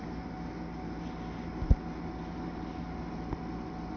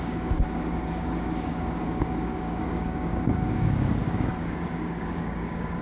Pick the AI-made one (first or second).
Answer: second